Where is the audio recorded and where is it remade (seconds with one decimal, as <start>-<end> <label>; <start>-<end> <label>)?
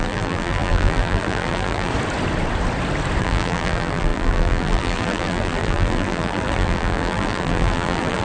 0.0-1.9 remade; 1.9-3.2 recorded; 3.2-8.2 remade